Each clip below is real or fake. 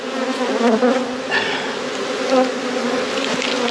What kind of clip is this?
real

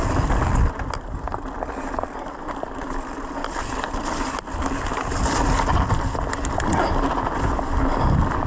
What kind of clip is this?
real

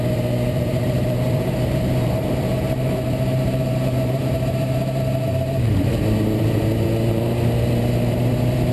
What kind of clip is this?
fake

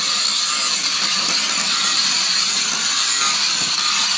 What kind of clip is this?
fake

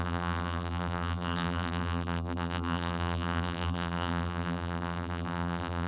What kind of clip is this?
fake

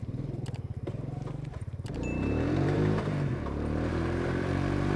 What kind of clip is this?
fake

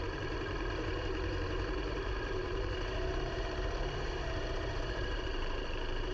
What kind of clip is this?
fake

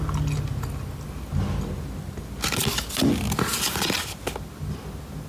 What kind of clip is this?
real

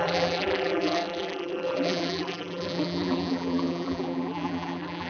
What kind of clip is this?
fake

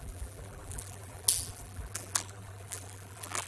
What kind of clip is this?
fake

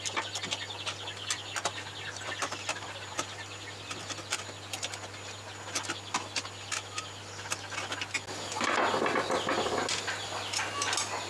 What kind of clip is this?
real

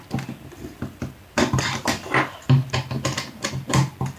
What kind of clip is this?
fake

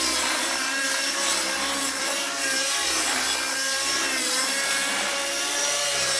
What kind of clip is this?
fake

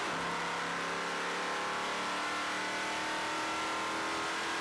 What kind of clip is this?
real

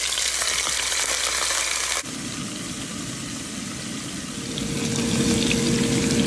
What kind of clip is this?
real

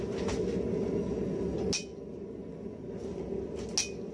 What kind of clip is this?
real